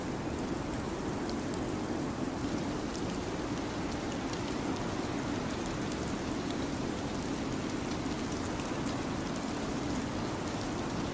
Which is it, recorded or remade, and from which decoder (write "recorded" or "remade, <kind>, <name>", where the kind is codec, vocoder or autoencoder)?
recorded